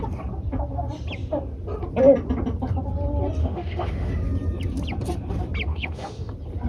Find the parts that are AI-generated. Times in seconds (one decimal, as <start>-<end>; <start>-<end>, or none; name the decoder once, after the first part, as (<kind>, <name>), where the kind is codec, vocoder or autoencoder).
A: 3.4-4.1 (autoencoder, DAC-VAE); 5.7-6.3